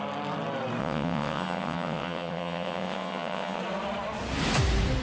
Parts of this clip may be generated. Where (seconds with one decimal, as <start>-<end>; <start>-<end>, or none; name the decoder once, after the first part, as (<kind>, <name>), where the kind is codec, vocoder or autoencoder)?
0.8-3.6 (vocoder, WaveNeXt)